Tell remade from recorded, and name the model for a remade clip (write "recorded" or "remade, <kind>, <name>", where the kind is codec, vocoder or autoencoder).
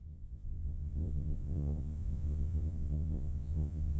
remade, vocoder, Vocos